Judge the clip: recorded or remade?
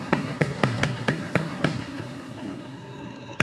remade